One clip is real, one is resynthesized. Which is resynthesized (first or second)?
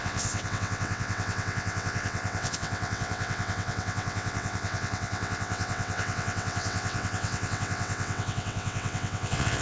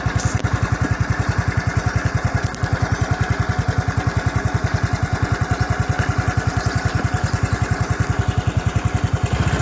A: first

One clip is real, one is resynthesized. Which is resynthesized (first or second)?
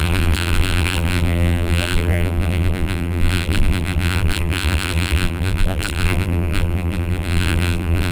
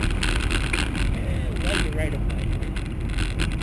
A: first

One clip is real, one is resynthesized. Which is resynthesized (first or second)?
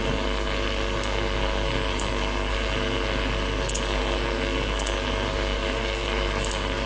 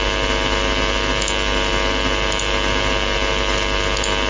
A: first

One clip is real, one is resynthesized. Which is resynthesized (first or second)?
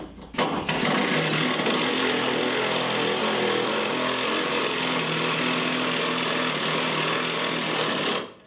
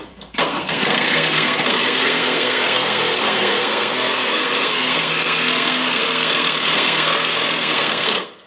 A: second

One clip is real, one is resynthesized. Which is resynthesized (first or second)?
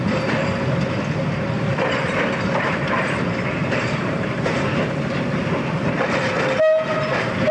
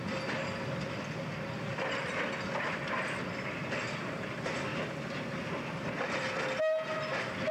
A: first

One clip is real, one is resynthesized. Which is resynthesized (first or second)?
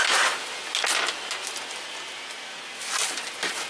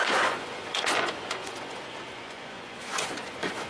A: second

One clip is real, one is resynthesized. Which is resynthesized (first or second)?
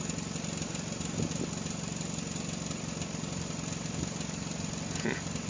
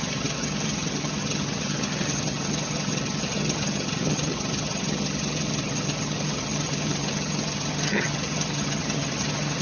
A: second